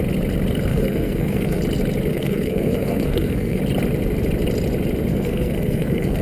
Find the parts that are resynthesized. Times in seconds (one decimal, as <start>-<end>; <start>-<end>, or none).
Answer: 0.7-1.6; 2.1-3.6; 5.1-6.2